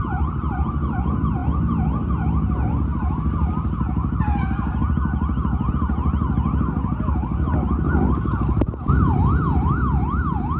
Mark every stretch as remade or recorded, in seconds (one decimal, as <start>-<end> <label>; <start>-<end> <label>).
0.0-10.6 recorded